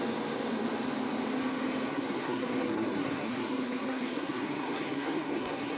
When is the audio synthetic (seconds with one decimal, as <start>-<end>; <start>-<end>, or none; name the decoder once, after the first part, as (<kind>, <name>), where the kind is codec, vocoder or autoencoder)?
1.9-5.8 (codec, SNAC)